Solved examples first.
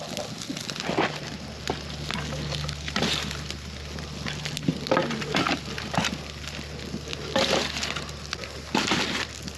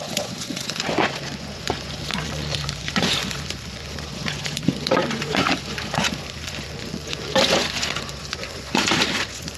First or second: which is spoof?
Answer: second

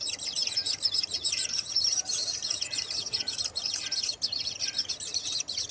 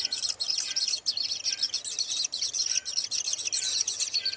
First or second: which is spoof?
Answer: first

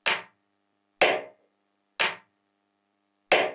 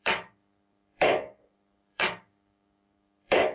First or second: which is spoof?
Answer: second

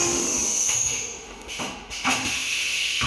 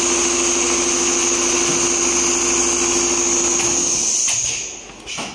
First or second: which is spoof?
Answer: first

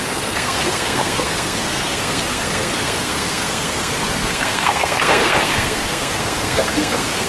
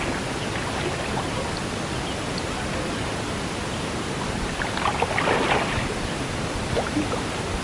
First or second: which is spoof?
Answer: first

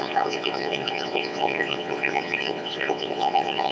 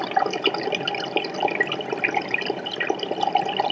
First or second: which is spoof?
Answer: first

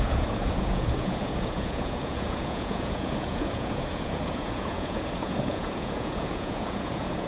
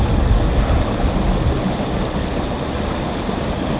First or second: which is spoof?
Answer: first